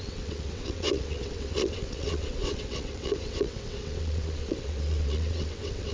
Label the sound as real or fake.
fake